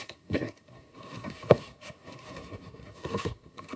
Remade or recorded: remade